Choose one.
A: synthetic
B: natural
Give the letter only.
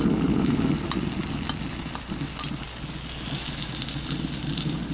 B